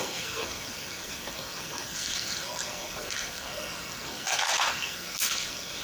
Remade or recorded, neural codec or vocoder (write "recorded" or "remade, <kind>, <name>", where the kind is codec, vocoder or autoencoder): remade, codec, SNAC